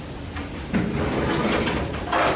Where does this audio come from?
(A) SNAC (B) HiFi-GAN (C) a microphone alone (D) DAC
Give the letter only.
C